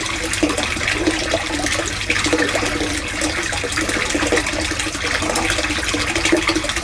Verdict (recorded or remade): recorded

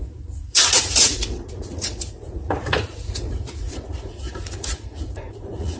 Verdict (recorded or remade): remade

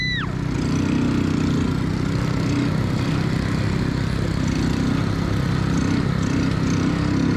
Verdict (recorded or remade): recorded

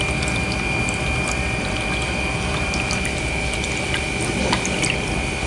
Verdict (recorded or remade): recorded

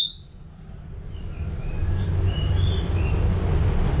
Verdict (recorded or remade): recorded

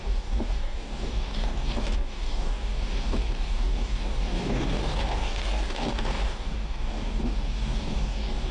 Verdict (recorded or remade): remade